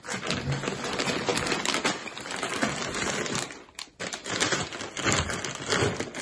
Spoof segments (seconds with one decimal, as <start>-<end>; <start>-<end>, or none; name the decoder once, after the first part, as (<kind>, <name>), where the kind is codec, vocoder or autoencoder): 4.2-4.7 (vocoder, BigVGAN v2)